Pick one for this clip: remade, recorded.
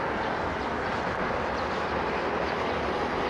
recorded